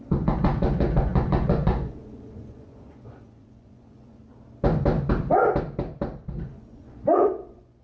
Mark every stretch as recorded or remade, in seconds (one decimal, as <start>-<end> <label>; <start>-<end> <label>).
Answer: 0.0-4.2 remade; 4.2-6.4 recorded; 6.4-7.8 remade